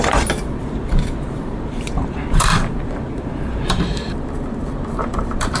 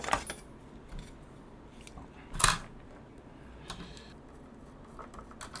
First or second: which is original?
second